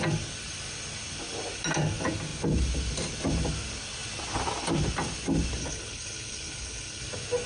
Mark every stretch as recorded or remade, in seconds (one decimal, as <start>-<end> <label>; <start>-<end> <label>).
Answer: 0.0-5.6 recorded; 5.6-7.0 remade; 7.0-7.5 recorded